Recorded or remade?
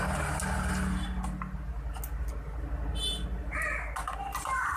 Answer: recorded